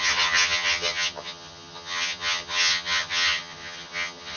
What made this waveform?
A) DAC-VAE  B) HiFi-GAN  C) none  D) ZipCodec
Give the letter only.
B